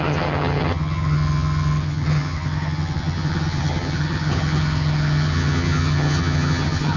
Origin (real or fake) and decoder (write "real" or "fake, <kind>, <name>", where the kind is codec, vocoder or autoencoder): fake, vocoder, HiFi-GAN